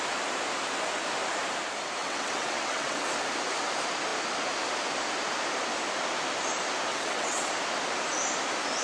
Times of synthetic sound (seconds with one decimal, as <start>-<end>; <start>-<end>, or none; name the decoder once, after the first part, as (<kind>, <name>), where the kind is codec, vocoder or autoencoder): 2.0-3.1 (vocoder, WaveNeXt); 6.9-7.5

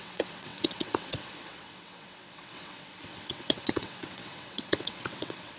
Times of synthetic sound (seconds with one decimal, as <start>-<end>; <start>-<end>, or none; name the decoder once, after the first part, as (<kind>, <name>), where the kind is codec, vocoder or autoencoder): 0.0-5.6 (vocoder, WaveNeXt)

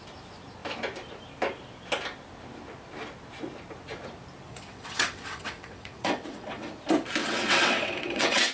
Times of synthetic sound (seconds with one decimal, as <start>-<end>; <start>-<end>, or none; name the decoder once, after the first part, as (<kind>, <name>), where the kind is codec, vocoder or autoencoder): 4.5-6.7 (vocoder, WaveNeXt); 7.2-8.5

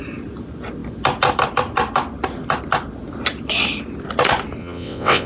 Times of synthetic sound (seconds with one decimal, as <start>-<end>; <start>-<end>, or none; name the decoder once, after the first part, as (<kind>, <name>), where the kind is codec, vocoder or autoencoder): 4.6-5.3 (vocoder, WaveNeXt)

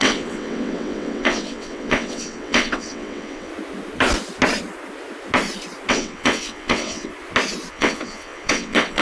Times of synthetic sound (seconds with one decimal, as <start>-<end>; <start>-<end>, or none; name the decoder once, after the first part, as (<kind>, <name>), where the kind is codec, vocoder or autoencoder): 0.0-3.5 (vocoder, WaveNeXt); 5.9-7.1; 7.7-9.0

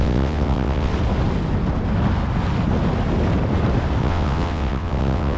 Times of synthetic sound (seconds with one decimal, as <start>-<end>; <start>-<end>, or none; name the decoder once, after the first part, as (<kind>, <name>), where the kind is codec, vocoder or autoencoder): 0.0-0.9 (vocoder, WaveNeXt); 4.0-5.4